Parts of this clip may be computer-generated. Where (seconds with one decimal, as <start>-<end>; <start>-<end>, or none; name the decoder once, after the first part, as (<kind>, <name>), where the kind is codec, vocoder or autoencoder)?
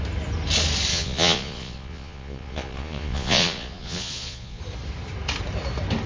0.9-4.6 (vocoder, Vocos)